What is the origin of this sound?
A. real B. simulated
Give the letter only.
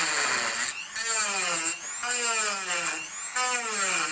A